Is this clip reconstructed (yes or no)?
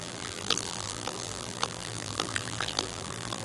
yes